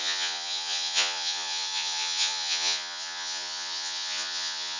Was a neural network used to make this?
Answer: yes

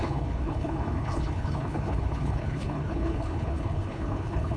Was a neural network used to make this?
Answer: yes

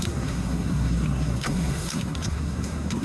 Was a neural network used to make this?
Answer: yes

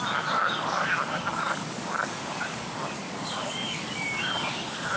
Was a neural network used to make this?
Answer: yes